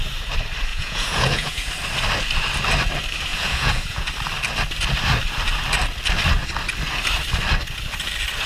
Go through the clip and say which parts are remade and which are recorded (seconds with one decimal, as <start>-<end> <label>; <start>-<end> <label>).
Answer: 0.0-0.7 recorded; 0.7-1.7 remade; 1.7-3.3 recorded; 3.3-4.1 remade; 4.1-8.5 recorded